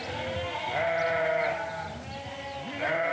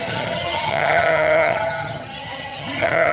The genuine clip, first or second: first